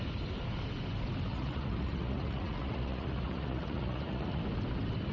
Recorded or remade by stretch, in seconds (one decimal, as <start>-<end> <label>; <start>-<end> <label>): 0.0-1.3 recorded; 1.3-4.4 remade; 4.4-5.1 recorded